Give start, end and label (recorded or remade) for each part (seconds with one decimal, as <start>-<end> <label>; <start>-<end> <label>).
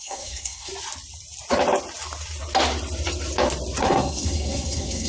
0.0-0.7 remade; 0.7-3.8 recorded; 3.8-5.1 remade